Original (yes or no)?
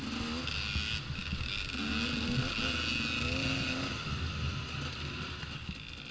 yes